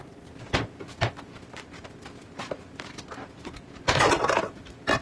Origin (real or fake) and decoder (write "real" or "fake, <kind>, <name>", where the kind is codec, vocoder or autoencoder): real